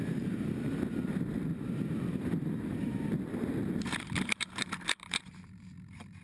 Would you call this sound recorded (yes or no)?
no